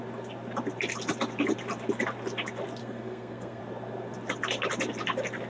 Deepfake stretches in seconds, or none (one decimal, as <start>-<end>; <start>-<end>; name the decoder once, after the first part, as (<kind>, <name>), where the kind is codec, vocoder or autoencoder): 2.8-3.6 (codec, SNAC)